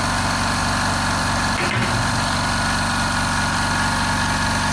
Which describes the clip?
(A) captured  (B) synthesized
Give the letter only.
A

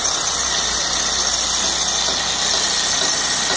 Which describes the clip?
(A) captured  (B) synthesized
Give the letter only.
A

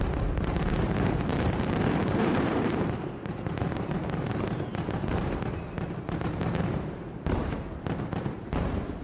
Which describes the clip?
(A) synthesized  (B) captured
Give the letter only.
A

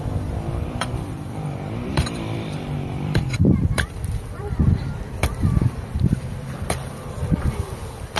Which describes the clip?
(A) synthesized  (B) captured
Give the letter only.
A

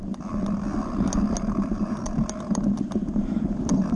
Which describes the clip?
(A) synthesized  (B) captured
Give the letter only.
A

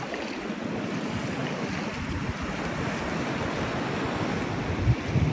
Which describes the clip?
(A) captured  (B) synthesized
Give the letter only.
A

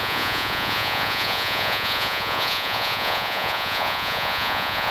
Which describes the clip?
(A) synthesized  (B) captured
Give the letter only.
A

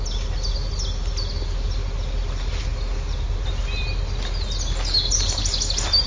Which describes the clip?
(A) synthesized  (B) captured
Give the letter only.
B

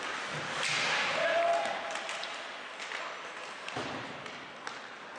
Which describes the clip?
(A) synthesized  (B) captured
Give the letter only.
B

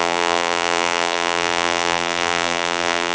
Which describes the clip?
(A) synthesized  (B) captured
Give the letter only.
A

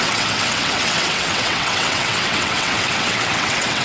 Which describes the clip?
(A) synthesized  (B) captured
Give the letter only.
A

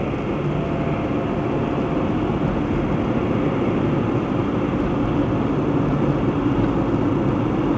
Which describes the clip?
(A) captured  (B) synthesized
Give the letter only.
A